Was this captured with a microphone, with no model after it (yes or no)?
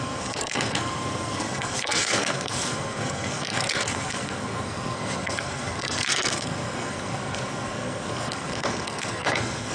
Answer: no